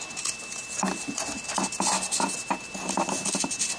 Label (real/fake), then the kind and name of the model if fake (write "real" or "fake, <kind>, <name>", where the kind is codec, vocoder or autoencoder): real